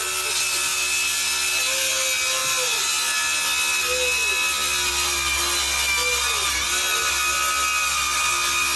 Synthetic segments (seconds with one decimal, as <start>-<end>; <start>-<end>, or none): none